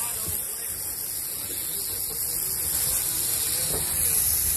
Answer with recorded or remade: recorded